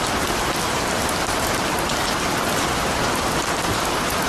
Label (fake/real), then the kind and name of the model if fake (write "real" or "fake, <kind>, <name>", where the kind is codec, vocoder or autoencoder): real